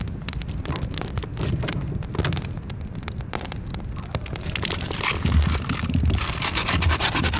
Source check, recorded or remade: recorded